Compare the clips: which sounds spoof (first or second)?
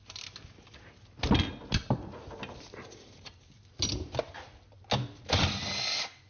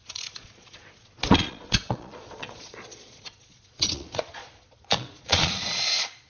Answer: second